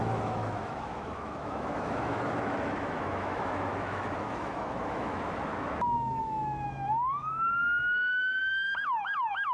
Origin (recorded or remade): remade